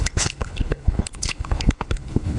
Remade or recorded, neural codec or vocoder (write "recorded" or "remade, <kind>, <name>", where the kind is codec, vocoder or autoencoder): remade, codec, HILCodec